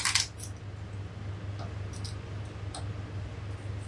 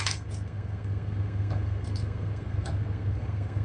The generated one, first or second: second